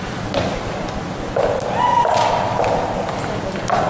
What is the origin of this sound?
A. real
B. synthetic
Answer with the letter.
A